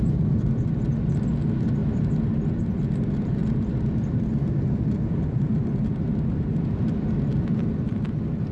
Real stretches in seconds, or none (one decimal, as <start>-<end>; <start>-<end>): 0.0-8.5